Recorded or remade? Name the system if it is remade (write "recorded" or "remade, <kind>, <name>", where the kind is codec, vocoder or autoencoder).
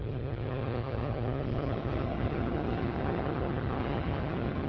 remade, vocoder, HiFi-GAN